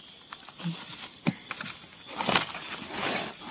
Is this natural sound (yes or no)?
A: yes